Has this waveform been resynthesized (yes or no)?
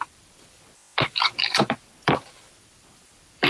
yes